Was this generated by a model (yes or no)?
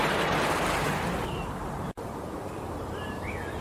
yes